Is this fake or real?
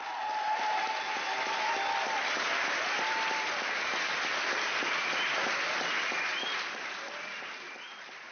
real